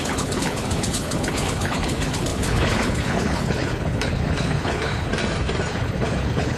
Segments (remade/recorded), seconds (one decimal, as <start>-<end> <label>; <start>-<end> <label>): 0.0-5.1 remade; 5.1-5.7 recorded; 5.7-6.6 remade